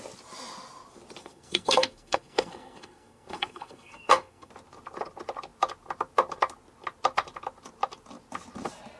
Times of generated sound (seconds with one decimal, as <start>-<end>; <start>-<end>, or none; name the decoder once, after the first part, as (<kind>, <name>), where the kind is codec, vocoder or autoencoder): 1.2-4.5 (codec, SNAC)